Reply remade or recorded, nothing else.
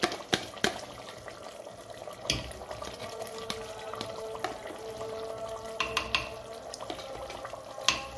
recorded